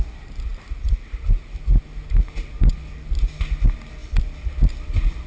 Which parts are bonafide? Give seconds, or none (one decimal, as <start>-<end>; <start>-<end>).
0.0-5.3